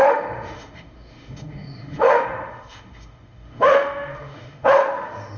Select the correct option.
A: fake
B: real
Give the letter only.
A